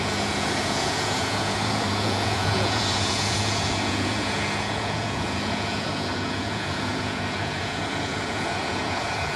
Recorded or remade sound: remade